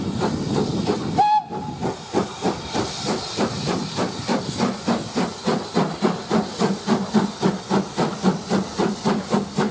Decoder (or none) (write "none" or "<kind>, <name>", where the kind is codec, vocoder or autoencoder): none